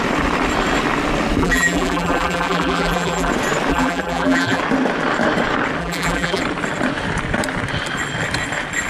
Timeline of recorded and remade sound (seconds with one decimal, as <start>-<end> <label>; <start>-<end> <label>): 0.0-1.4 recorded; 1.4-3.3 remade; 3.3-3.7 recorded; 3.7-4.6 remade; 4.6-5.8 recorded; 5.8-6.4 remade; 6.4-8.9 recorded